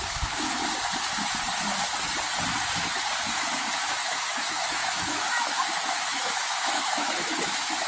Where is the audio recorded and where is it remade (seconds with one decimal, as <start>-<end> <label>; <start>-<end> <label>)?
0.0-0.6 remade; 0.6-3.4 recorded; 3.4-7.9 remade